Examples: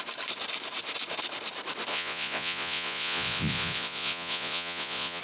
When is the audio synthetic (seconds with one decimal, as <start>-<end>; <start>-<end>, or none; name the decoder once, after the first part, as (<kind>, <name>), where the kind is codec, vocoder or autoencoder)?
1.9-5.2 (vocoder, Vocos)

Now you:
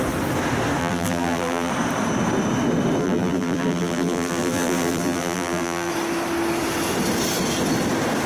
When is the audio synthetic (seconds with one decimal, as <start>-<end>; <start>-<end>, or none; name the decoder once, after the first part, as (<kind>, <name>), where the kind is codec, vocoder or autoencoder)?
0.8-1.7 (vocoder, BigVGAN v2); 3.0-5.9

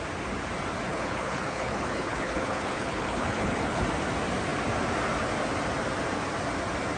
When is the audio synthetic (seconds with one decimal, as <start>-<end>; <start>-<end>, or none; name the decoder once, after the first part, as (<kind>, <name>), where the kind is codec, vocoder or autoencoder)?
0.9-3.8 (codec, HILCodec)

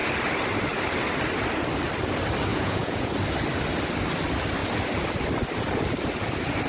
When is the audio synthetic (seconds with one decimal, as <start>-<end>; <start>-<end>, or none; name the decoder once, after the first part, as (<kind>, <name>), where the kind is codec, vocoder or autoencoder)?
2.5-3.1 (vocoder, Vocos)

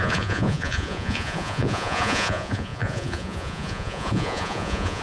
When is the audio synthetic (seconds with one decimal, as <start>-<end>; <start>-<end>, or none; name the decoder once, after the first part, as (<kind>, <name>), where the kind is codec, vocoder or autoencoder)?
0.0-5.0 (vocoder, Vocos)

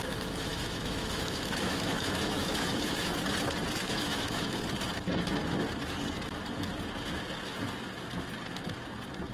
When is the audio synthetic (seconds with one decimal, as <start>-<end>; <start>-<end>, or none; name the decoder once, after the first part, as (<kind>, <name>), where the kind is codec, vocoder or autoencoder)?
0.5-3.1 (autoencoder, DAC-VAE); 3.8-4.6

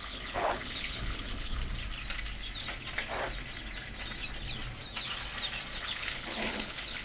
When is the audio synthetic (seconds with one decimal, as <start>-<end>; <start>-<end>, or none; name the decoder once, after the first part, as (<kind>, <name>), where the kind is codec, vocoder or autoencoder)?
0.0-1.6 (codec, HILCodec); 5.8-7.0

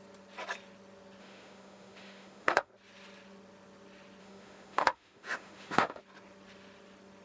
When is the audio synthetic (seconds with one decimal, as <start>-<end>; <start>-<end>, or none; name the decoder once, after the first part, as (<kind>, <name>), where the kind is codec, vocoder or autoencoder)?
1.2-2.7 (autoencoder, DAC-VAE); 4.2-6.0